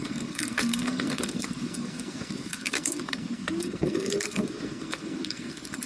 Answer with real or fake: fake